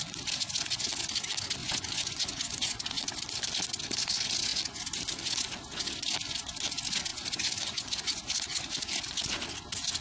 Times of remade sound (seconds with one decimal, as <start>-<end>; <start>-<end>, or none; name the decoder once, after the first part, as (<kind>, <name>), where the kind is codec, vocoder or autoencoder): 1.6-3.0 (vocoder, Vocos); 7.1-8.2